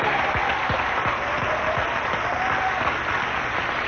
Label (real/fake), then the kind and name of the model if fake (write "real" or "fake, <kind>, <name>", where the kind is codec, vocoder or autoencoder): real